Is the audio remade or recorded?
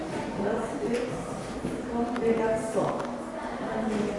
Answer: recorded